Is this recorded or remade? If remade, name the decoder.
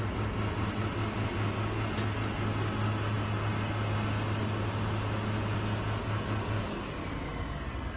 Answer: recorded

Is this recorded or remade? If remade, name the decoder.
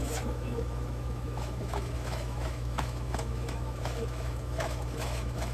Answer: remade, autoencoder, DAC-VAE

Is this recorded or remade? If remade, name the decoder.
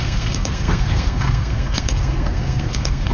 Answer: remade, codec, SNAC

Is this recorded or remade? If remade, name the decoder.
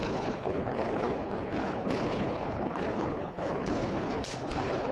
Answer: remade, codec, HILCodec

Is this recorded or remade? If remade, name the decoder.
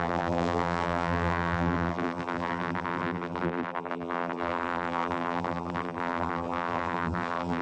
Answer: remade, vocoder, BigVGAN v2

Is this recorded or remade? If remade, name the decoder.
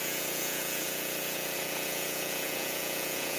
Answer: remade, vocoder, Vocos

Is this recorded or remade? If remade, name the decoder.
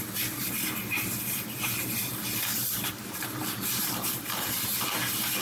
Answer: recorded